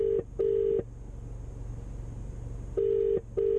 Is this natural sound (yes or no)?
yes